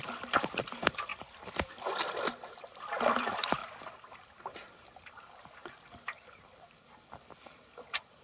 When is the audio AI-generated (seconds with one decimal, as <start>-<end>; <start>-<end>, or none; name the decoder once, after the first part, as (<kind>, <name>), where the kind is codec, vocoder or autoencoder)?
0.0-3.6 (vocoder, BigVGAN v2); 4.4-8.2